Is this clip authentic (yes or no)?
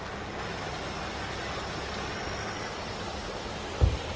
yes